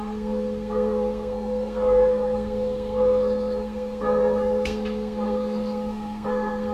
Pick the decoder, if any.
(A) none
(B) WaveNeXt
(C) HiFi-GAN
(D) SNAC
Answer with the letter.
D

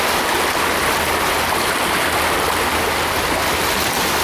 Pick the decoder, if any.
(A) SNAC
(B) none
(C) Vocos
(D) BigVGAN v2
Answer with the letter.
B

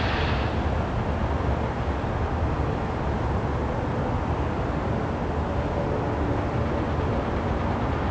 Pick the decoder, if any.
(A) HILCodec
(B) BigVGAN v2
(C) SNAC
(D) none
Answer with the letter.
D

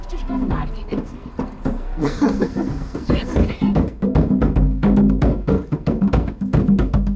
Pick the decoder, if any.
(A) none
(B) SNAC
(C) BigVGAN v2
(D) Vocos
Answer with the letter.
B